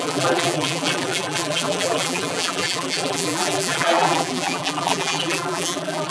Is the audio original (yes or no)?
no